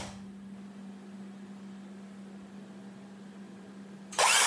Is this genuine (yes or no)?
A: yes